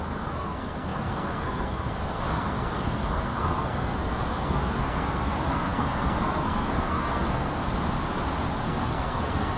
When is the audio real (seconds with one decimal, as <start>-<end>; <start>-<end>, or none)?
7.6-8.5